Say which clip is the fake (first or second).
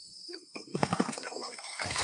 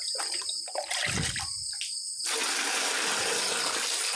first